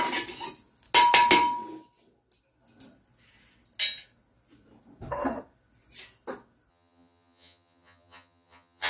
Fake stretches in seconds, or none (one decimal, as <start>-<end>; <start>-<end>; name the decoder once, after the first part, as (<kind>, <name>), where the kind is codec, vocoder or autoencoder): 6.7-8.9 (vocoder, HiFi-GAN)